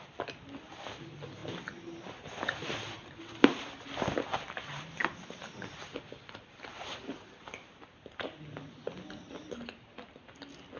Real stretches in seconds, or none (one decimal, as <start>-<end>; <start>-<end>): 0.0-10.8